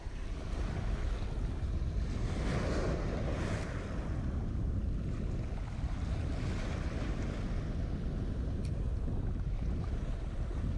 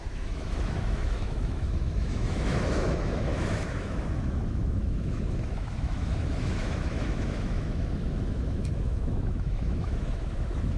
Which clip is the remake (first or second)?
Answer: second